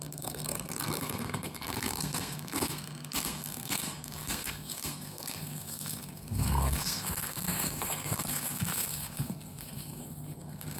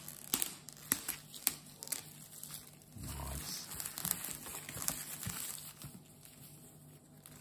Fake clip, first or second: first